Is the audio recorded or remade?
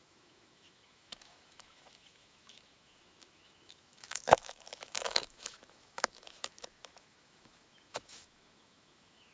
remade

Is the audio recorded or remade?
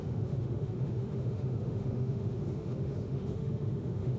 remade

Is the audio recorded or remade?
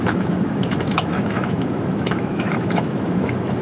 remade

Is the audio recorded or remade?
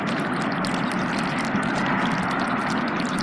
recorded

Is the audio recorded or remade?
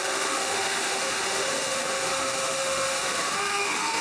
remade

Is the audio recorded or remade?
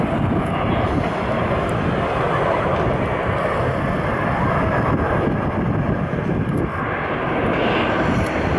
recorded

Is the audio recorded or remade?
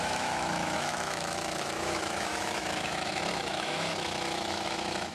remade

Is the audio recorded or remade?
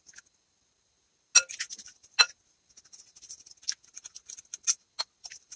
recorded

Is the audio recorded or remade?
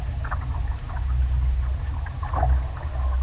recorded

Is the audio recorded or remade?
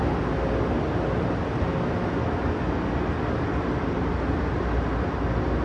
recorded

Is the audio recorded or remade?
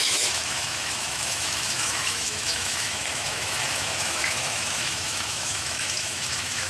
remade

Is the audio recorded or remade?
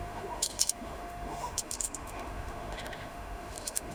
remade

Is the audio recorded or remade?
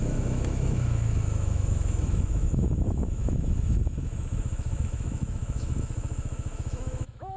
remade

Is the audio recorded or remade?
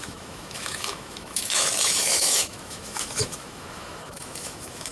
remade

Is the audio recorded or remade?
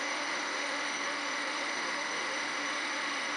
remade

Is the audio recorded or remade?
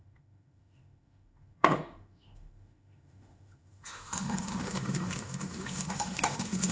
remade